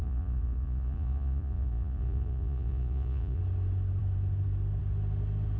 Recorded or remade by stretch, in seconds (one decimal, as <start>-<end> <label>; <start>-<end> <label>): 0.0-3.4 remade; 3.4-5.6 recorded